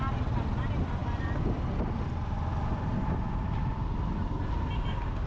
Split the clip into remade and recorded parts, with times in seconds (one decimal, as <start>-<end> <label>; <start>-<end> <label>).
0.0-5.3 recorded